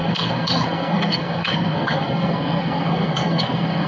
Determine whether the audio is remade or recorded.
remade